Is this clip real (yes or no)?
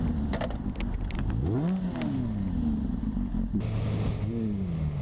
yes